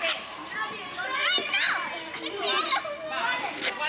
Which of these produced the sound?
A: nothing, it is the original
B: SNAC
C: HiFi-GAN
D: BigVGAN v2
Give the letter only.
A